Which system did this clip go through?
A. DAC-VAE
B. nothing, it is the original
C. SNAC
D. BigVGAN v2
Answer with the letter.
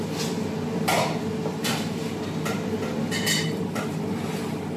B